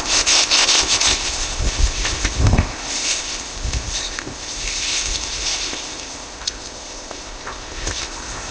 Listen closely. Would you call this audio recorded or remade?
remade